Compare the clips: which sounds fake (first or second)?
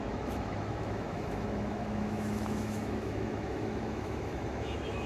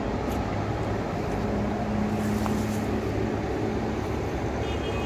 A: first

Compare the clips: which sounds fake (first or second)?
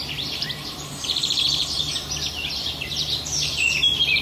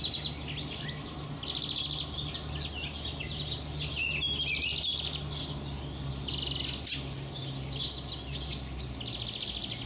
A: first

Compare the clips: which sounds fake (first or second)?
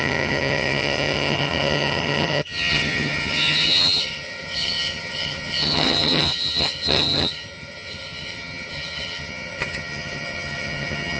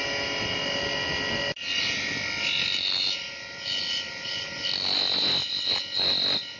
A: first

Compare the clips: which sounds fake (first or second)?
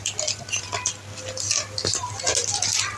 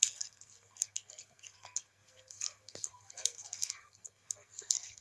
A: second